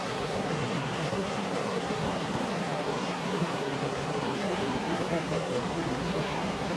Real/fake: fake